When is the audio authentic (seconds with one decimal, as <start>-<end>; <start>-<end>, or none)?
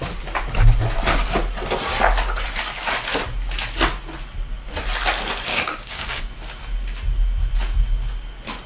0.0-5.5; 6.2-8.7